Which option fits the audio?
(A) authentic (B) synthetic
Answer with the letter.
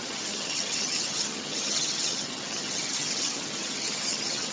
B